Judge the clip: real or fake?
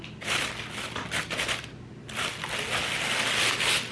real